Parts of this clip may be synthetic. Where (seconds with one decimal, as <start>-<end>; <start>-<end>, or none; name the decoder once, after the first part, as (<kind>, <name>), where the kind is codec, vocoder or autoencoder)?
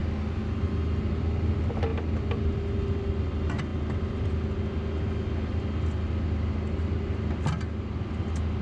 none